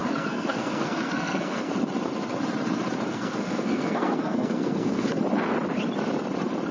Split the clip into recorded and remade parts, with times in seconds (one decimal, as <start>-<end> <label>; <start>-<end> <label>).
0.0-1.7 remade; 1.7-3.1 recorded; 3.1-5.2 remade; 5.2-6.7 recorded